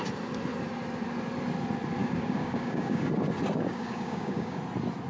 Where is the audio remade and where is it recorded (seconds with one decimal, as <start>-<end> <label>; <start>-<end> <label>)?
0.0-2.0 recorded; 2.0-3.1 remade; 3.1-3.7 recorded; 3.7-4.6 remade; 4.6-5.1 recorded